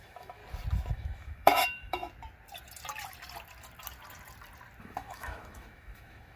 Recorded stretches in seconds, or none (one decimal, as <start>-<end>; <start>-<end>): 0.4-0.9; 2.0-4.8